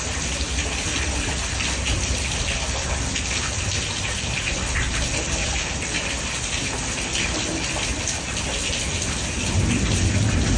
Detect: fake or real real